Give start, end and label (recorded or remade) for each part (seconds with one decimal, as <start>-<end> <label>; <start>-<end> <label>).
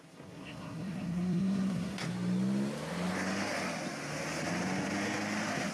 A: 0.0-2.1 remade; 2.1-5.7 recorded